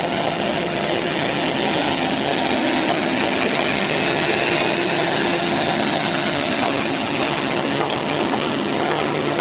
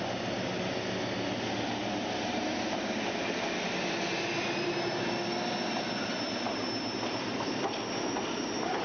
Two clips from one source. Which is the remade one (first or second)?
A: first